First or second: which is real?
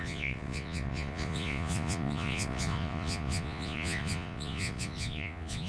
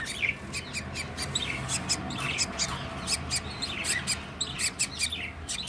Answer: second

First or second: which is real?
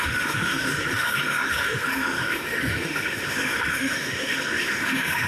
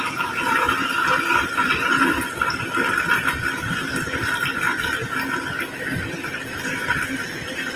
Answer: second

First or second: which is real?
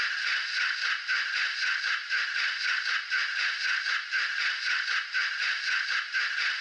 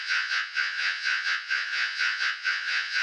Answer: first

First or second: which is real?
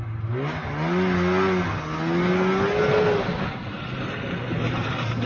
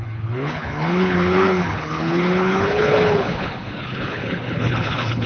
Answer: first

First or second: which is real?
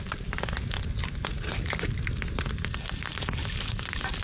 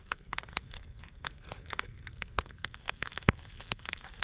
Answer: first